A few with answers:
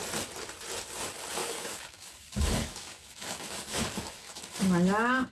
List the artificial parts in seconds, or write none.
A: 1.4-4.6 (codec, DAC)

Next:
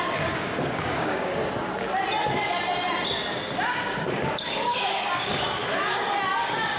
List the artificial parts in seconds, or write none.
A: 0.0-1.4 (codec, DAC); 3.7-6.8

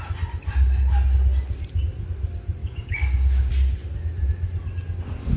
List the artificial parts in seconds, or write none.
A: 2.6-3.5 (codec, DAC)

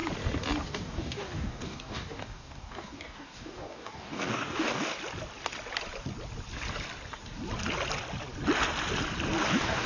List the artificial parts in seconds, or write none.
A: 0.7-4.9 (codec, DAC); 9.5-9.9

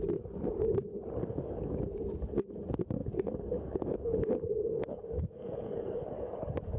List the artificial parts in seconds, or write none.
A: 1.2-1.8 (codec, DAC); 3.0-6.8

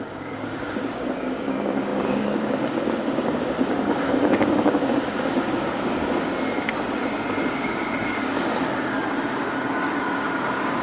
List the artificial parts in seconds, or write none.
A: 0.0-6.3 (codec, DAC); 7.5-10.8

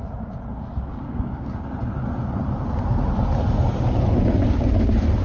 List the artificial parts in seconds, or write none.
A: 0.9-1.7 (codec, DAC)